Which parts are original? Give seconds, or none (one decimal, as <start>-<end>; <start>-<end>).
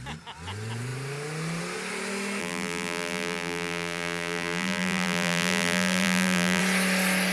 0.0-2.4; 6.6-7.3